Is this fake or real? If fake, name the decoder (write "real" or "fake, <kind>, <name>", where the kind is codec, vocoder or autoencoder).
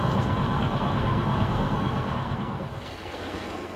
fake, codec, SNAC